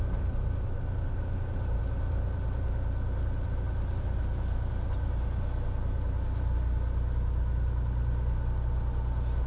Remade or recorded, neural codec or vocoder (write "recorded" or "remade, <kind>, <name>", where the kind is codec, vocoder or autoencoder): recorded